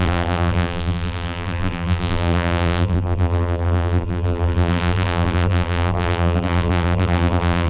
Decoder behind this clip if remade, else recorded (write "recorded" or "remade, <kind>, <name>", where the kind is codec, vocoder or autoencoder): remade, vocoder, BigVGAN v2